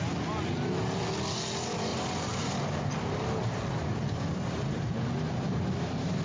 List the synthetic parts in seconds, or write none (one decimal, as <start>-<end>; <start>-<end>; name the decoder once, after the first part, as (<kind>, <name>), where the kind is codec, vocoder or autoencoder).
1.9-5.6 (vocoder, BigVGAN v2)